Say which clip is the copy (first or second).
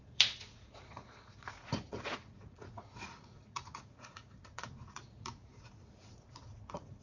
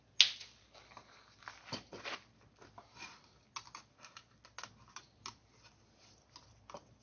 first